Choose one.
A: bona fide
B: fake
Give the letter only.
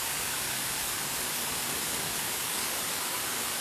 B